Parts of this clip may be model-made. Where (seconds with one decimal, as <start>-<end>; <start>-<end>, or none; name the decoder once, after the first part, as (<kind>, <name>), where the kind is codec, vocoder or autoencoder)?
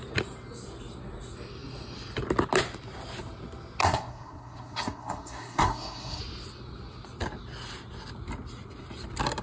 3.8-6.2 (codec, SNAC)